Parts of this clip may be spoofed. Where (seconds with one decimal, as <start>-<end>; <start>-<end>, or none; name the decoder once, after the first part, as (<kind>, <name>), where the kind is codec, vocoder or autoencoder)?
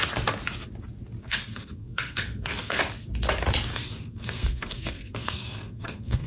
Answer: 1.2-2.8 (codec, SNAC); 3.7-6.3